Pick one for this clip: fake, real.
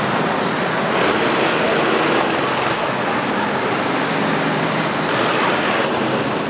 real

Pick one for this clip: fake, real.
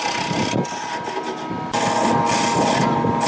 real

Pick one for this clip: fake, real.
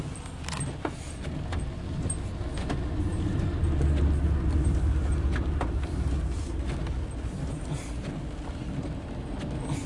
real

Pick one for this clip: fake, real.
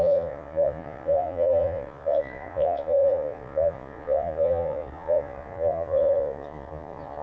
fake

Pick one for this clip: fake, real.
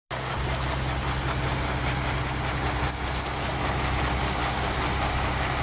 real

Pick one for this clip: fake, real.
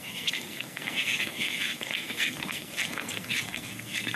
fake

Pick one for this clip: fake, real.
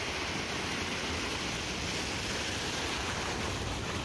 real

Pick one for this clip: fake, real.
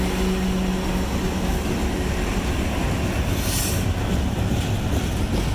real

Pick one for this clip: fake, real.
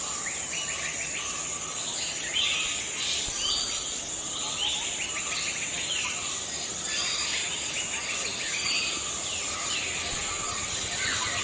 real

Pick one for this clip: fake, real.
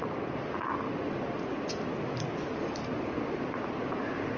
real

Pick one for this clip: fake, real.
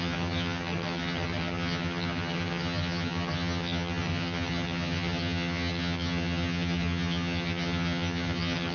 fake